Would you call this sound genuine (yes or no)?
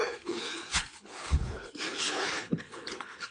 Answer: no